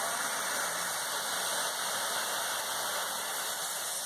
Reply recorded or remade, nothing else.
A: recorded